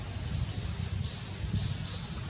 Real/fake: real